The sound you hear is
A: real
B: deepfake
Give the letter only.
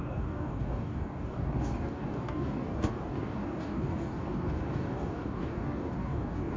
B